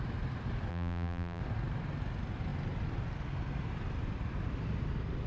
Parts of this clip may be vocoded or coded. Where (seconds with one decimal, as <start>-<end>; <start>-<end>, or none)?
0.7-1.4